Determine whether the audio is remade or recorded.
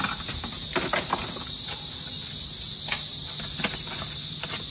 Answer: recorded